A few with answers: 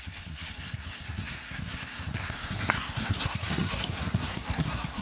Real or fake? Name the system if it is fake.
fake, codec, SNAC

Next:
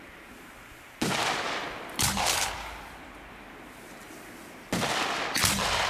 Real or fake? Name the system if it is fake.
real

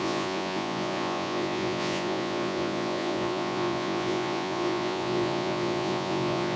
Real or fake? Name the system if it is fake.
fake, vocoder, Vocos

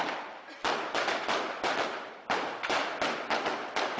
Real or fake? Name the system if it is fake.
real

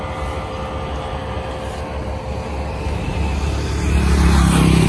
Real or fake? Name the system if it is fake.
real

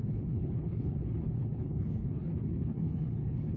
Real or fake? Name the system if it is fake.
fake, codec, HILCodec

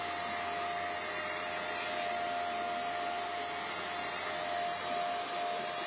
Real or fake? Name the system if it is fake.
real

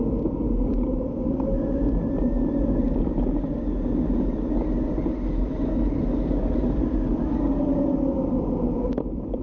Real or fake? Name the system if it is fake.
real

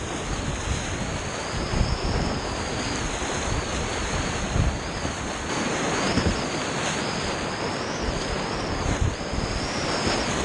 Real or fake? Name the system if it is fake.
real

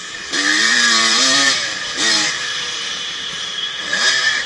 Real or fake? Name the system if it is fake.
fake, vocoder, BigVGAN v2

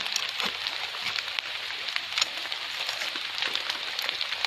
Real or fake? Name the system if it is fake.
real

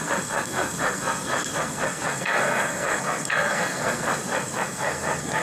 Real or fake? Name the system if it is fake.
fake, codec, SNAC